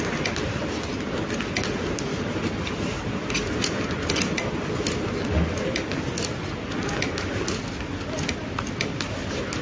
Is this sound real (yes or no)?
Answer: yes